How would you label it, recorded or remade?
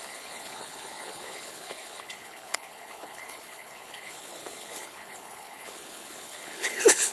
remade